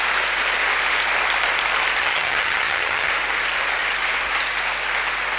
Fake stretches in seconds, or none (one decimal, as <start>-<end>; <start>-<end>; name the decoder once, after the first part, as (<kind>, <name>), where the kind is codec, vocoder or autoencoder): 2.0-3.1 (vocoder, HiFi-GAN)

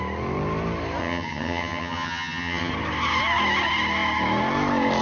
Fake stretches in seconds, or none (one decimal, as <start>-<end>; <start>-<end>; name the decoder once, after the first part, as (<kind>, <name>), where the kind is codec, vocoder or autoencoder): 1.0-2.7 (vocoder, HiFi-GAN)

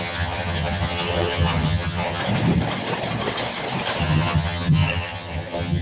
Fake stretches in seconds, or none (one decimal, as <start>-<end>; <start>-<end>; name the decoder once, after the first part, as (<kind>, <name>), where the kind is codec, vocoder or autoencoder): 0.0-2.2 (vocoder, HiFi-GAN); 4.0-5.8

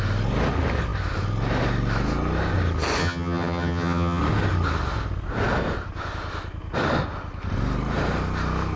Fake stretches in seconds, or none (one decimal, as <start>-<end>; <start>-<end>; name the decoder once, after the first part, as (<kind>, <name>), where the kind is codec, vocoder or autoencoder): 3.0-4.2 (vocoder, HiFi-GAN)

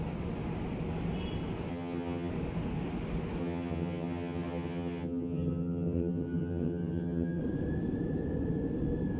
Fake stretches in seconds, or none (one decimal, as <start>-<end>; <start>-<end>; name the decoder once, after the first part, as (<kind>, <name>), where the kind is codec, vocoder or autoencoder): 1.7-2.3 (vocoder, HiFi-GAN); 3.4-7.4